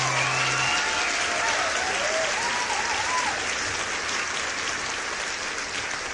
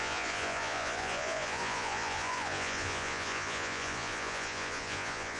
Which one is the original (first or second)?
first